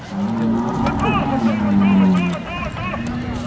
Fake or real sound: real